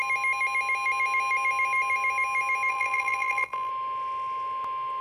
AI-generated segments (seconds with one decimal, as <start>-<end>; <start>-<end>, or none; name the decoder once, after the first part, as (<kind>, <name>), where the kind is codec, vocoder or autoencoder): 2.7-3.7 (vocoder, BigVGAN v2)

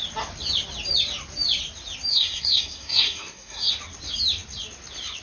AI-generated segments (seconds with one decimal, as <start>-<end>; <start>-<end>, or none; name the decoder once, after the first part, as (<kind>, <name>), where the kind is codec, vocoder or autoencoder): 2.1-3.7 (codec, SNAC)

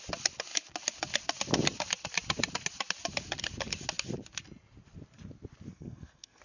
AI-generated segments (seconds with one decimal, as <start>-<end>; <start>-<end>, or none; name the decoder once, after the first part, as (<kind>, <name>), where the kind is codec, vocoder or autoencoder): 5.7-6.4 (codec, SNAC)

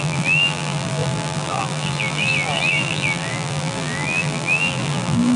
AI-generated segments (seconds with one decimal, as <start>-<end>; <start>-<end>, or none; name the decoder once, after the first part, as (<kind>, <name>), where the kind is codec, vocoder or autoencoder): 0.0-5.4 (vocoder, BigVGAN v2)

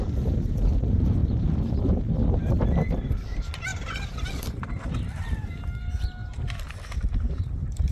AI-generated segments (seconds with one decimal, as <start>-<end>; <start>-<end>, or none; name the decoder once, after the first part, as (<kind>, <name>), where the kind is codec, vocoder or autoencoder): 3.7-4.7 (vocoder, BigVGAN v2)

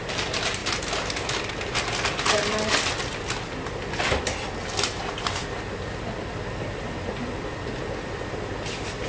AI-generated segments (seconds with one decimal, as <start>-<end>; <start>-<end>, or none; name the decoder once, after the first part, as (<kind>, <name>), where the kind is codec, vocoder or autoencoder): none